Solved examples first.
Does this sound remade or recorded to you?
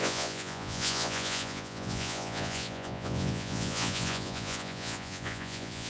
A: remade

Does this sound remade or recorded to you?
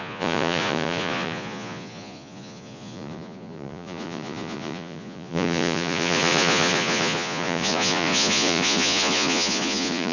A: remade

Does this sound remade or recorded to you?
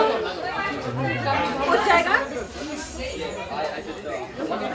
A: recorded